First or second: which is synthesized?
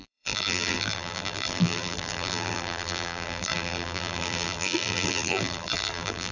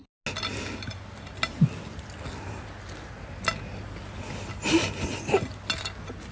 first